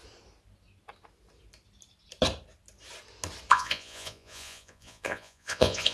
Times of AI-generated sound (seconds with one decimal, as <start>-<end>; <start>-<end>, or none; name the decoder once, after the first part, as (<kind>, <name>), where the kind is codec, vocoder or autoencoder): 3.5-5.9 (vocoder, Vocos)